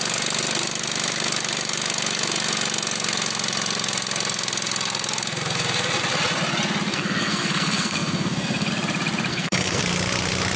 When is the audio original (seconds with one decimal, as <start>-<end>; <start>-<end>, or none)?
0.0-6.9; 8.7-9.3; 9.8-10.6